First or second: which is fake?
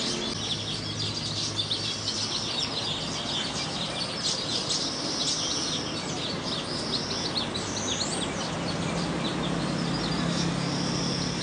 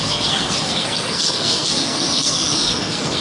second